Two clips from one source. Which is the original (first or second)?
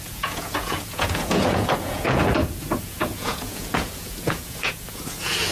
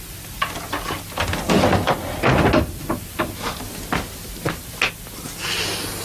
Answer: second